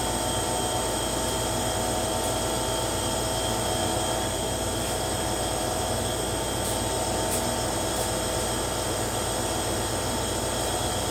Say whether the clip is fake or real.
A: real